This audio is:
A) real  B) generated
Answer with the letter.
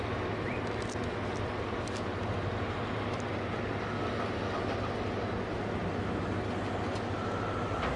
A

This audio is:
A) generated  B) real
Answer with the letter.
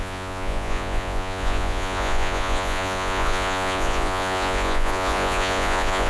A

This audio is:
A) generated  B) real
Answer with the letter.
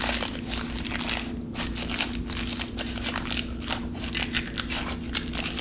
B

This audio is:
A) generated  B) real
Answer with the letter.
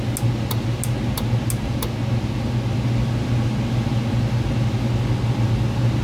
B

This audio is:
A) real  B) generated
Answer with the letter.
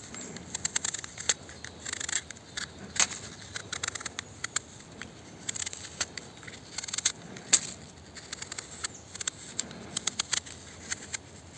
A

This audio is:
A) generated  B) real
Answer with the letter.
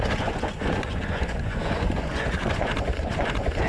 A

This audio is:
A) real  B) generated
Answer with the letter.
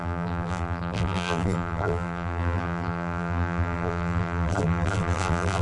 B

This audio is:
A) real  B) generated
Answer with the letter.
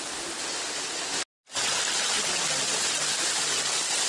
A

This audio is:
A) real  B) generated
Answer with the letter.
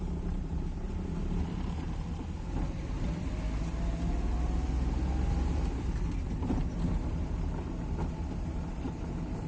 A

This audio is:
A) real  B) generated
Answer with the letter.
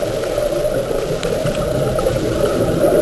A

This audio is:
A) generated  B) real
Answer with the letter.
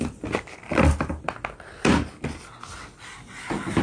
B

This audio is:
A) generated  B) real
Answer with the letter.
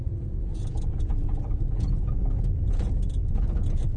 A